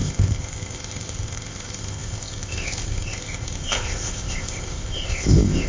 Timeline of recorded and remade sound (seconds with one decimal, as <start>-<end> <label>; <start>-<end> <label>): 0.0-5.7 remade